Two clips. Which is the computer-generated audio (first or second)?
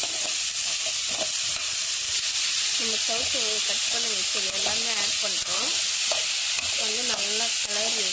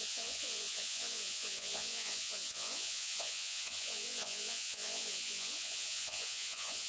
second